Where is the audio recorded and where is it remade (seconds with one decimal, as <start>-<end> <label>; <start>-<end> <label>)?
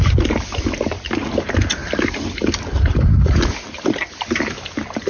0.0-5.1 recorded